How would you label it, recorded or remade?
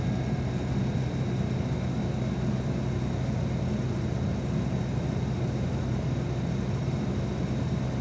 recorded